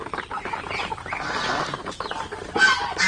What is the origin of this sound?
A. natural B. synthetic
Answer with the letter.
A